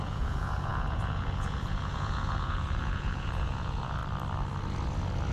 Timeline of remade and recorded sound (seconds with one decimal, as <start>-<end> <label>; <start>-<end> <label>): 0.0-4.0 remade; 4.0-5.3 recorded

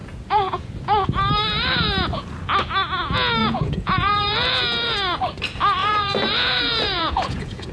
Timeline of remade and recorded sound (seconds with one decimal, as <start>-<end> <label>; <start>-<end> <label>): 0.0-0.7 remade; 0.7-3.4 recorded; 3.4-4.6 remade; 4.6-5.8 recorded; 5.8-7.7 remade

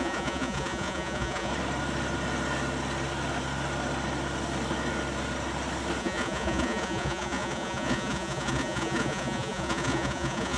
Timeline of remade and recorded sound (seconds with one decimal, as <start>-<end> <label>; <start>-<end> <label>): 0.0-1.5 remade; 1.5-6.0 recorded; 6.0-10.6 remade

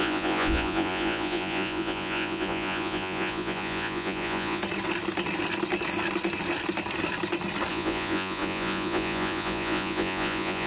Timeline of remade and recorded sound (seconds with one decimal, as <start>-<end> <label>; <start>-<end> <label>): 0.0-4.6 remade; 4.6-7.7 recorded; 7.7-10.7 remade